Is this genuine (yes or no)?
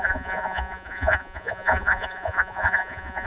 no